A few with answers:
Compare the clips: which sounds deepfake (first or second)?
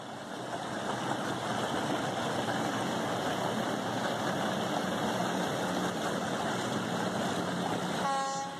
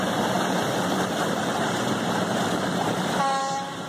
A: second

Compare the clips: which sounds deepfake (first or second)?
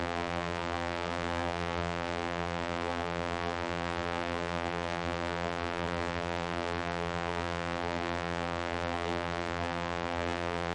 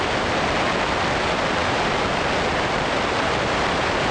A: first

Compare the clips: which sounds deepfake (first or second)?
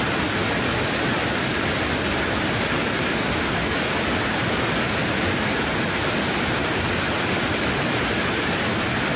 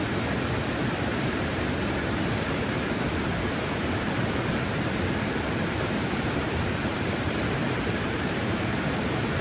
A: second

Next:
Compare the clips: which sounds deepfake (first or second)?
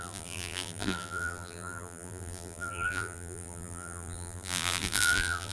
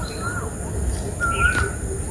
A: first